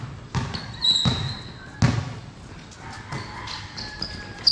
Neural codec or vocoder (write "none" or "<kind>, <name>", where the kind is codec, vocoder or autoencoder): none